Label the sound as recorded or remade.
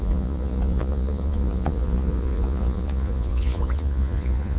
remade